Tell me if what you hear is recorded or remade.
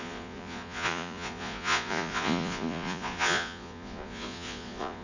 remade